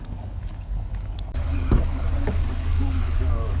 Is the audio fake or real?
fake